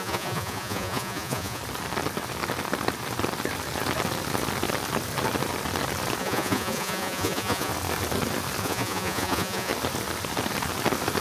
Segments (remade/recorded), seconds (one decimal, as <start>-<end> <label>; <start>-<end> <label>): 0.0-1.6 remade; 1.6-6.2 recorded; 6.2-7.7 remade; 7.7-8.6 recorded; 8.6-9.7 remade; 9.7-11.2 recorded